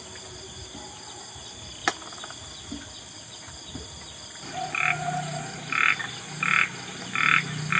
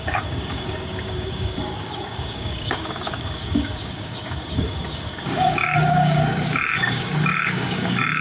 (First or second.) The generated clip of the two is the second